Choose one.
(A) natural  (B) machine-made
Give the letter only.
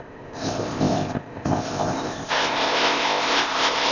B